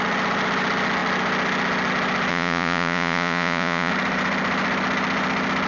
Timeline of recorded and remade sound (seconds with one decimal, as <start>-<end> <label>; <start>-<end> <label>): 0.0-2.3 recorded; 2.3-3.9 remade; 3.9-5.7 recorded

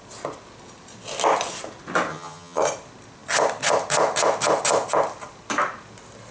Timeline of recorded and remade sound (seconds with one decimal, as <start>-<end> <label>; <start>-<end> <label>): 0.0-2.1 recorded; 2.1-2.6 remade; 2.6-6.3 recorded